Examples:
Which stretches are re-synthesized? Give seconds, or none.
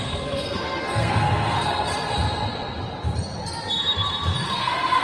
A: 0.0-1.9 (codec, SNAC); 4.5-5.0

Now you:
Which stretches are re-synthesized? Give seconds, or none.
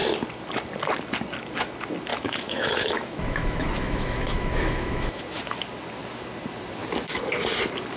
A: 2.1-5.2 (autoencoder, DAC-VAE)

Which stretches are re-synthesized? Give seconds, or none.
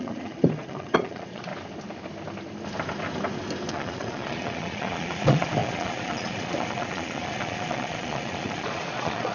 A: 0.0-1.5 (vocoder, Vocos); 3.7-9.3